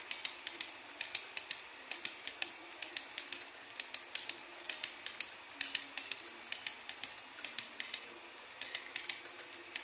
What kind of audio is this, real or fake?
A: real